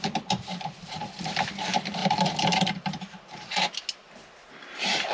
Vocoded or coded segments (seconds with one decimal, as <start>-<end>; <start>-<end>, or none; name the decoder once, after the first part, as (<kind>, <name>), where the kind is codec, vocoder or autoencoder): 2.0-3.7 (vocoder, BigVGAN v2)